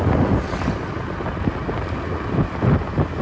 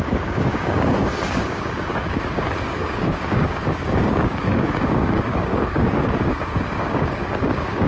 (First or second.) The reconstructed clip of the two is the second